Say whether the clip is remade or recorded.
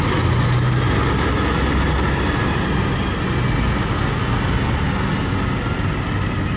recorded